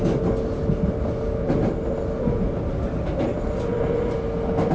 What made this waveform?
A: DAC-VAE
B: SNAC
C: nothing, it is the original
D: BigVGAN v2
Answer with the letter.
C